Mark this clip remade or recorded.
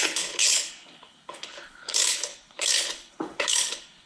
remade